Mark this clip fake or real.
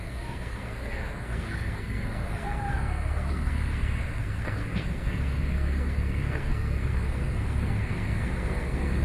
fake